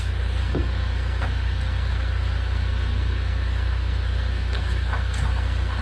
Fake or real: fake